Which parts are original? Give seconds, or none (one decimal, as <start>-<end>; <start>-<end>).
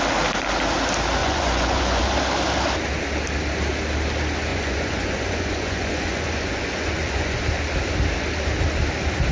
0.0-1.2; 2.0-4.5; 7.4-9.3